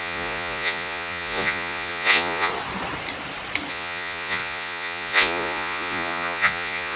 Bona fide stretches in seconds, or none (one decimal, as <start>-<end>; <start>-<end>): 2.5-3.7